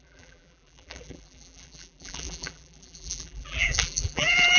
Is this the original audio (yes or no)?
no